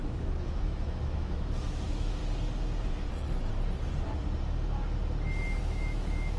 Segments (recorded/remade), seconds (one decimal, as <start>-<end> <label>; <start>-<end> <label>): 0.0-2.2 remade; 2.2-3.1 recorded; 3.1-3.5 remade; 3.5-5.6 recorded; 5.6-6.4 remade

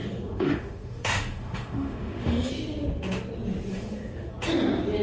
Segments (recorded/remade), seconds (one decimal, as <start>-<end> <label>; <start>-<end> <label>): 0.0-2.5 remade; 2.5-3.7 recorded; 3.7-4.3 remade; 4.3-5.0 recorded

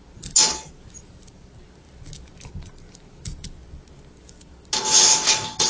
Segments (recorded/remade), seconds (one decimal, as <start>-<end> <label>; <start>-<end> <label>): 0.0-5.7 recorded

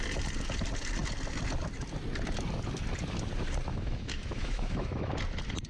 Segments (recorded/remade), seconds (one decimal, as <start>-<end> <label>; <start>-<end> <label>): 0.0-3.7 recorded; 3.7-5.1 remade; 5.1-5.7 recorded